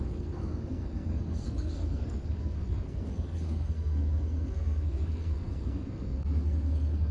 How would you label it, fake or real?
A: fake